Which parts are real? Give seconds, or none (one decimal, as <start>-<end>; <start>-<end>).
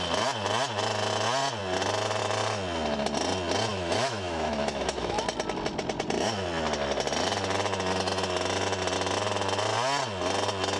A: 0.0-3.7; 5.2-10.8